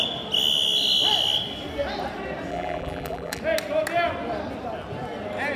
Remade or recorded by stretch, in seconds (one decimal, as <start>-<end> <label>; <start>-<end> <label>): 0.0-2.5 recorded; 2.5-3.4 remade; 3.4-5.6 recorded